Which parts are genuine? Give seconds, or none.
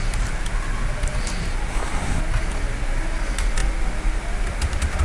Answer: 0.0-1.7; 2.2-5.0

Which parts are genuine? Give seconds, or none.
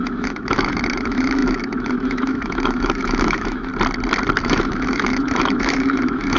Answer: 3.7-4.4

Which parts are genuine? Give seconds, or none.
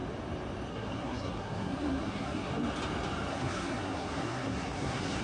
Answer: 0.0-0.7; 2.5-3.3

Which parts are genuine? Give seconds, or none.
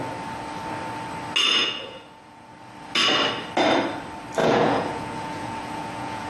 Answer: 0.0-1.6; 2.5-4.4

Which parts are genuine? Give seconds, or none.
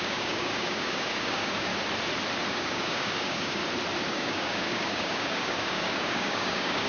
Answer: 1.7-2.5; 3.6-4.1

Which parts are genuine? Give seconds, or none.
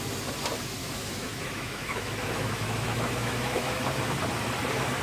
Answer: 0.0-0.8; 3.8-5.0